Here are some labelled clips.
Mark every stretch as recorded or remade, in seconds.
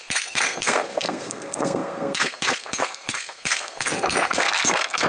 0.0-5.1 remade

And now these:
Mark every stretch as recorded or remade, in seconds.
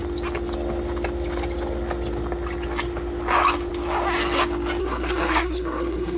0.0-4.8 recorded; 4.8-6.2 remade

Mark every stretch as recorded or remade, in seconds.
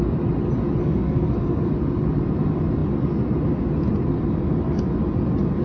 0.0-0.8 recorded; 0.8-1.7 remade; 1.7-5.6 recorded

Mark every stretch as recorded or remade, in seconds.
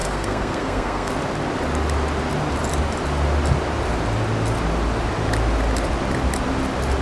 0.0-1.1 remade; 1.1-7.0 recorded